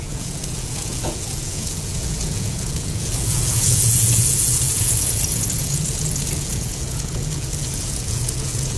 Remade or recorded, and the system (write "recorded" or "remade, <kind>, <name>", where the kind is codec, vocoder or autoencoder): remade, vocoder, Vocos